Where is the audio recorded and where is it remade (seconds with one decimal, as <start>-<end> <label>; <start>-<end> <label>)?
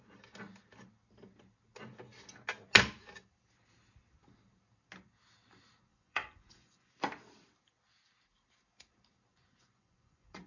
0.0-5.9 recorded; 5.9-6.9 remade; 6.9-9.3 recorded; 9.3-10.5 remade